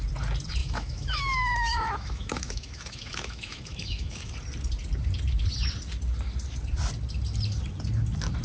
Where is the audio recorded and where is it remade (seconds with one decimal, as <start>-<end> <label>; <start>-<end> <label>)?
0.0-0.6 recorded; 0.6-4.3 remade; 4.3-8.4 recorded